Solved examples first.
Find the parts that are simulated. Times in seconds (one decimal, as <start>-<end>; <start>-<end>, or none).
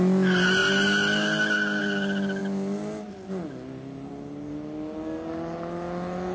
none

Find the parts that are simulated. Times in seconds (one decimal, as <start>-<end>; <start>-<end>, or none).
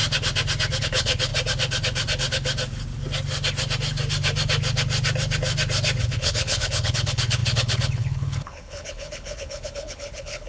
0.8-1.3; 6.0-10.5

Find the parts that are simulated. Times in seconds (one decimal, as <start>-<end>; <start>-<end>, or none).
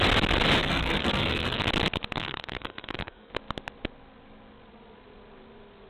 0.6-1.6; 2.2-3.3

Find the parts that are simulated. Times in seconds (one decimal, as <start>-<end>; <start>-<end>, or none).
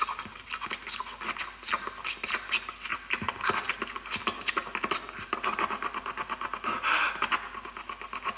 none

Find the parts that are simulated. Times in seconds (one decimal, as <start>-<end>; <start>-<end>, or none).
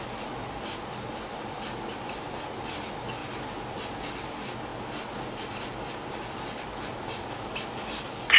none